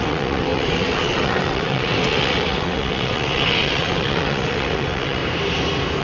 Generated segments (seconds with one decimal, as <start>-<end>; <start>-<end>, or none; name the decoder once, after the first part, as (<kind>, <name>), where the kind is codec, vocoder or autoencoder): 0.0-5.2 (vocoder, WaveNeXt)